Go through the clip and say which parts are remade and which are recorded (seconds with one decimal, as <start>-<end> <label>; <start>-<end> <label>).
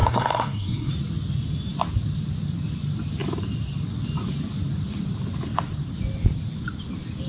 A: 0.0-0.9 remade; 0.9-7.3 recorded